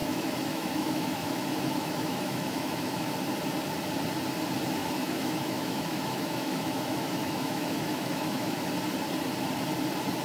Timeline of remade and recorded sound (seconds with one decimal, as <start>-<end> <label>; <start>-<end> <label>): 0.0-3.1 remade; 3.1-4.8 recorded; 4.8-8.6 remade; 8.6-10.2 recorded